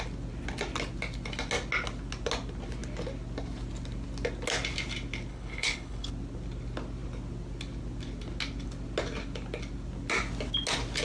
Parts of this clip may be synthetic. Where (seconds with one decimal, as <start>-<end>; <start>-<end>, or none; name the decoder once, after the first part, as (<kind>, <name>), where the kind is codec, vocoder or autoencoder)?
5.3-6.1 (codec, HILCodec)